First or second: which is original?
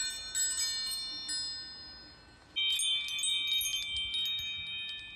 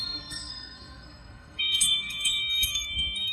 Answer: first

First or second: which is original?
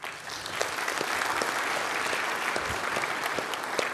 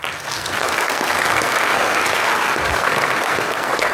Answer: first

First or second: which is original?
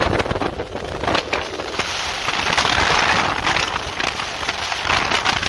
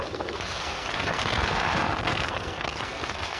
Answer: first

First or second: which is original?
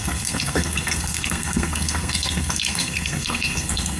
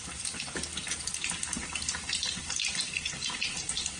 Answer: second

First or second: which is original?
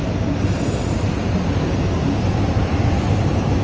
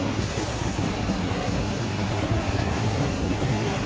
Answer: first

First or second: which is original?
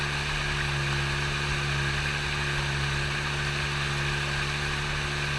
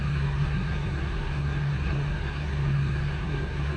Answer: first